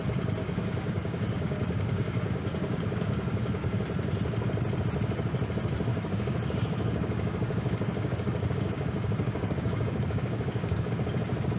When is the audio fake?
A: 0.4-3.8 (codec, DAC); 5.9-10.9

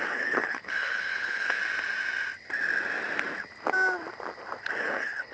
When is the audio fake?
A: 0.0-1.6 (codec, HILCodec); 4.8-5.3

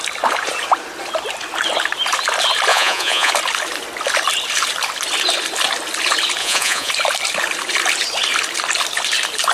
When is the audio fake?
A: 2.7-3.3 (vocoder, Vocos); 6.4-6.9

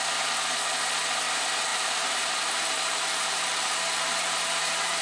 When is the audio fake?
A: 1.7-5.0 (vocoder, BigVGAN v2)

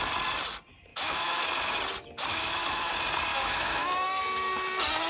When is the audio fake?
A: 0.9-1.4 (autoencoder, DAC-VAE); 2.3-2.9; 3.3-4.2

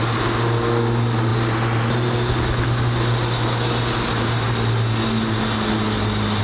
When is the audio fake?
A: none